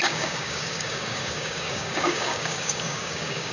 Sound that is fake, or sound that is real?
fake